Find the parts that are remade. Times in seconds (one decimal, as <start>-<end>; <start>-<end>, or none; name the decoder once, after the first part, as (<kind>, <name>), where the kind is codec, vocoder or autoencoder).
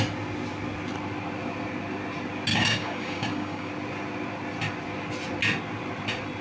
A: 2.5-3.7 (codec, DAC)